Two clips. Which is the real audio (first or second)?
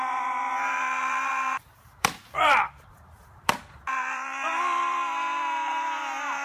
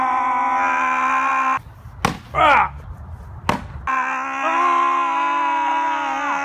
second